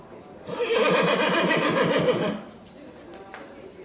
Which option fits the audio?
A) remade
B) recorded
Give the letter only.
A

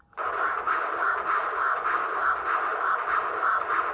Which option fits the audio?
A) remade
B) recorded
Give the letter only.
B